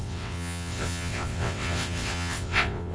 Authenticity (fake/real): fake